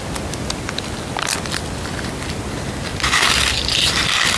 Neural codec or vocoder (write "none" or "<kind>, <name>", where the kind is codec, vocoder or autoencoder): none